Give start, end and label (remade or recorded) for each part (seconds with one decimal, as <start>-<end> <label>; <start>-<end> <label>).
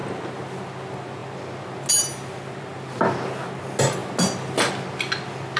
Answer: 0.0-5.6 recorded